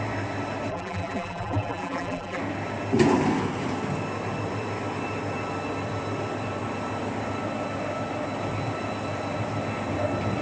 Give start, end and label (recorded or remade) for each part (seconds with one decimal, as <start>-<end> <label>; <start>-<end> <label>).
0.0-0.7 recorded; 0.7-2.4 remade; 2.4-10.4 recorded